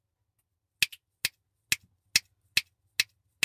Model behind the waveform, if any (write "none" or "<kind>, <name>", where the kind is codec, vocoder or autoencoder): none